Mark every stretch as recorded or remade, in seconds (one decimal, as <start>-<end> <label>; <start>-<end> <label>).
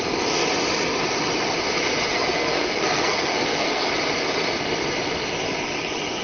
0.0-2.1 recorded; 2.1-3.9 remade; 3.9-6.2 recorded